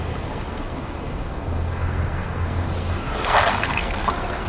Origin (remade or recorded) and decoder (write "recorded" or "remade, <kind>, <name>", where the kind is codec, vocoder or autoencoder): remade, codec, SNAC